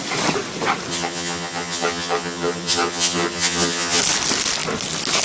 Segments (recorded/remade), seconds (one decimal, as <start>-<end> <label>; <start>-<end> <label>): 0.0-0.9 recorded; 0.9-4.0 remade; 4.0-5.2 recorded